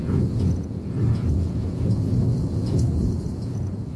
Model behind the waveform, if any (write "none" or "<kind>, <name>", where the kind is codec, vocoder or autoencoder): vocoder, Vocos